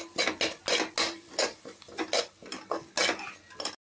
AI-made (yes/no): no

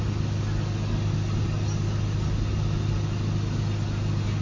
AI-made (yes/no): no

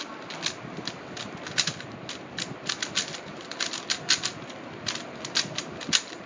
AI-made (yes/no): no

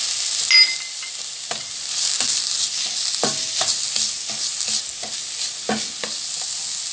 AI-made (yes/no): no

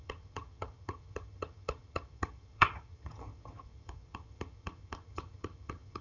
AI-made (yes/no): yes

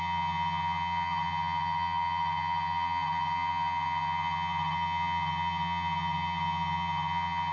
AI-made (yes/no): yes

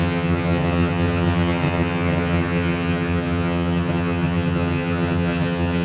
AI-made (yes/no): yes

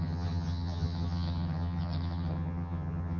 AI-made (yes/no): yes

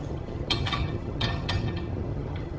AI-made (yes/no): yes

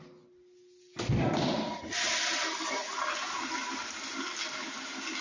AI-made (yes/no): no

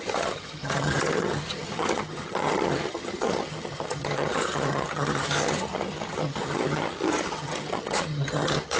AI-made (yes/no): yes